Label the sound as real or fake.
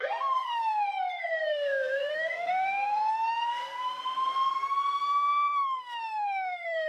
fake